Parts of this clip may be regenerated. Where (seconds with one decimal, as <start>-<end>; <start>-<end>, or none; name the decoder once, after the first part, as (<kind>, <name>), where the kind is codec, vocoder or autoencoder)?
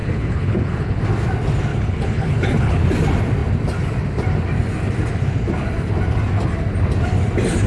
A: 0.0-1.0 (codec, HILCodec); 1.7-2.8